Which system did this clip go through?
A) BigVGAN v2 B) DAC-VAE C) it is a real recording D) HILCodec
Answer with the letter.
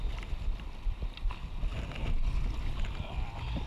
A